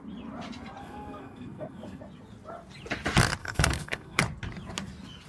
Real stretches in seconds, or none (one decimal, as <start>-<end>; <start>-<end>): 0.0-0.8; 2.0-3.4; 4.2-5.3